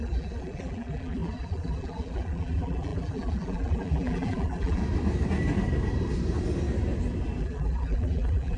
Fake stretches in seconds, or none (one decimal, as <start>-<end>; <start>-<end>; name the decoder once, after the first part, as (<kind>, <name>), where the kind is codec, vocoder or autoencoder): 0.0-4.8 (vocoder, BigVGAN v2); 7.4-8.6

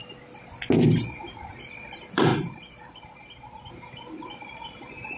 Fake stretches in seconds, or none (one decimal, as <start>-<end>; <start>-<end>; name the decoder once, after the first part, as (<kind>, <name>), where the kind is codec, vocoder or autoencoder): 0.9-5.2 (vocoder, BigVGAN v2)

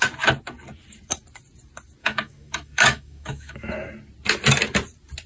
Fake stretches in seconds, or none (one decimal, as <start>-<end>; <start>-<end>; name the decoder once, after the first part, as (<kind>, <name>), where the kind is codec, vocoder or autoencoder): 2.0-3.7 (autoencoder, DAC-VAE)

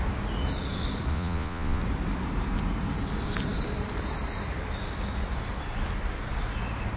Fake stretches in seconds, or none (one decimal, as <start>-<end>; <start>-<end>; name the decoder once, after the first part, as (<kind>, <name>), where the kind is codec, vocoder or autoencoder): 1.1-1.8 (vocoder, Vocos)

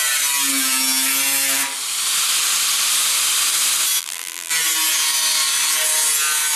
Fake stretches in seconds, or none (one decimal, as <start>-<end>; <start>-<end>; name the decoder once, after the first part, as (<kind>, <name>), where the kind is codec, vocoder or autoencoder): 4.0-4.5 (vocoder, BigVGAN v2)